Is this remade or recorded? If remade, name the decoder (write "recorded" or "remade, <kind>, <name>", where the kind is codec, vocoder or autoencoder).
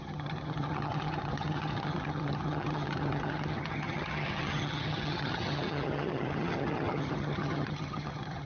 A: remade, vocoder, HiFi-GAN